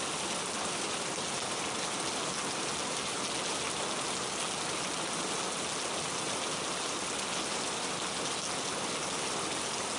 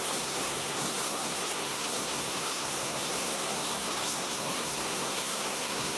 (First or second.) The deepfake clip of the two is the second